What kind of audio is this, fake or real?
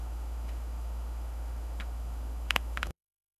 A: fake